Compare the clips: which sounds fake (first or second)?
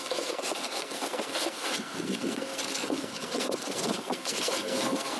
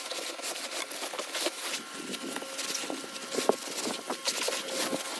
first